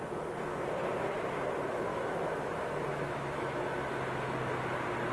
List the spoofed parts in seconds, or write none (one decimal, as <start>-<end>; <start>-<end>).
1.9-3.9